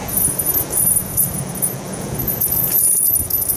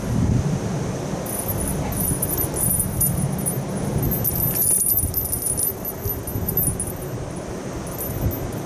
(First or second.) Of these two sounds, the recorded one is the second